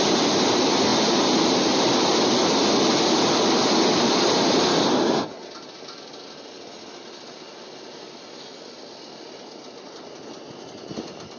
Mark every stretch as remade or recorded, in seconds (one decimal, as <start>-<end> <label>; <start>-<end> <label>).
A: 0.0-11.4 recorded